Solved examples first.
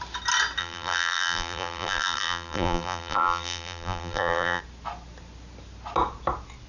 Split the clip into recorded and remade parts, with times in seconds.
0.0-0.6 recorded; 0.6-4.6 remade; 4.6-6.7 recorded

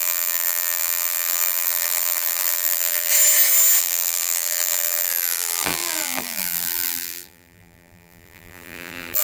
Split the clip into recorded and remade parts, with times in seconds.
0.0-3.1 remade; 3.1-3.8 recorded; 3.8-9.2 remade

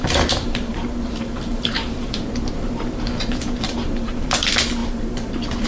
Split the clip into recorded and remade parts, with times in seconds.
0.0-5.7 remade